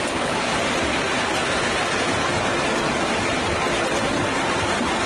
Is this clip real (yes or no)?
no